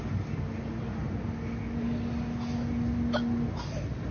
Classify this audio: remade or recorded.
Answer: recorded